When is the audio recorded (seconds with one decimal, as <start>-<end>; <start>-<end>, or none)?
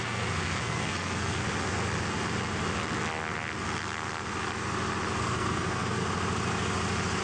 1.4-5.2; 6.0-7.2